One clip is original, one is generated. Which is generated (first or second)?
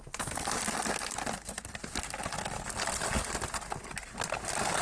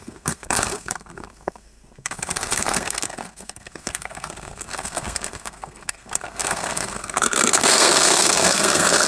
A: second